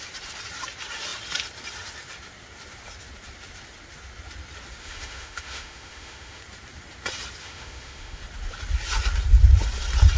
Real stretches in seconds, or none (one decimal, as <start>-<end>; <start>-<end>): 0.0-4.8; 6.4-7.4; 8.2-10.2